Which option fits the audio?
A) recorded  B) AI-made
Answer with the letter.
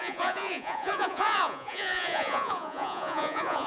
B